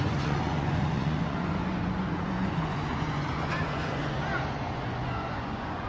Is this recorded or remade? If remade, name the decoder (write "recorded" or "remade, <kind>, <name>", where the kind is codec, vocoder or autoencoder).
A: remade, vocoder, Vocos